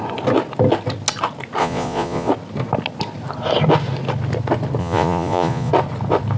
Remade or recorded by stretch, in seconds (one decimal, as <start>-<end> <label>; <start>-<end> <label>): 0.0-1.6 recorded; 1.6-2.3 remade; 2.3-4.8 recorded; 4.8-5.7 remade; 5.7-6.4 recorded